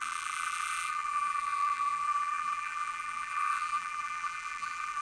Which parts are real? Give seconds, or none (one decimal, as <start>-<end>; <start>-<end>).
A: none

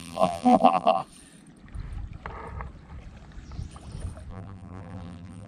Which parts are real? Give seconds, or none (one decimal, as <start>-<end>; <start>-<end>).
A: 1.0-4.3